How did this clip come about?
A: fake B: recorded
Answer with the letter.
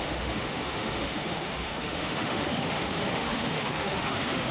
A